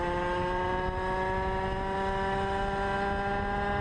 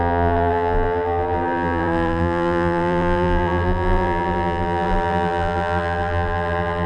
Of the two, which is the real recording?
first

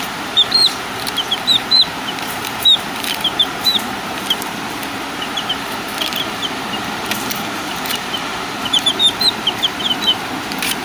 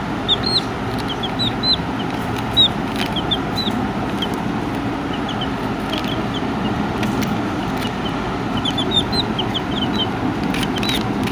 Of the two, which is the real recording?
second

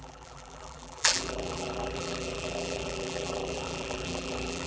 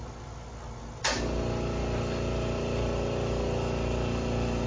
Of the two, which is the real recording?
second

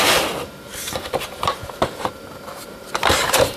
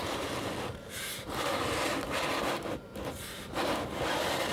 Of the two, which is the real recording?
second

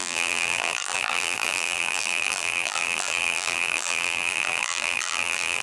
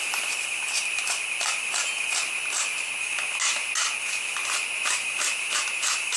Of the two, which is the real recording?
second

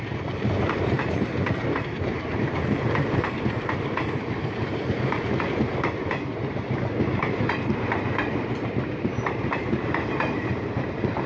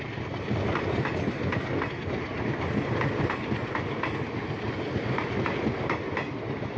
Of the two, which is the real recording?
second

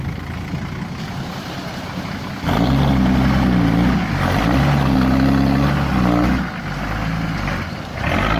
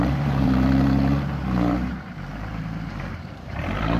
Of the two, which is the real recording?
first